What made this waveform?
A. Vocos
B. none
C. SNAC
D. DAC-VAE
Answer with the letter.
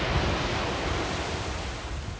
B